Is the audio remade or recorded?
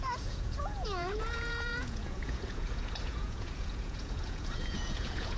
remade